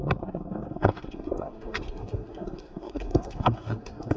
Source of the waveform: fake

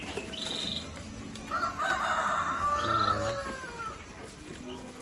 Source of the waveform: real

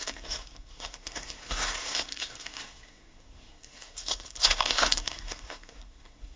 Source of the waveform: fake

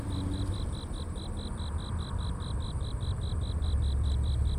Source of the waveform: fake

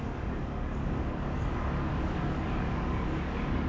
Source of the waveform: fake